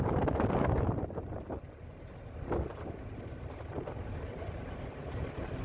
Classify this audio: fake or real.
real